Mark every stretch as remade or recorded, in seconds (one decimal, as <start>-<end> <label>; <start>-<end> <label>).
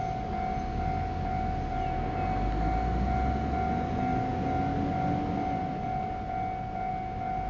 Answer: 0.0-7.5 recorded